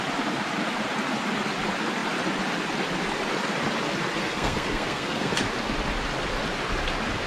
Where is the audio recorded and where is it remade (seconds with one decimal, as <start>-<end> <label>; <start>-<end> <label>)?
0.0-4.2 recorded; 4.2-5.3 remade; 5.3-7.3 recorded